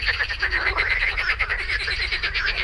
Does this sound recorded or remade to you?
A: remade